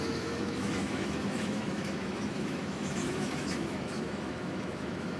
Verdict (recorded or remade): remade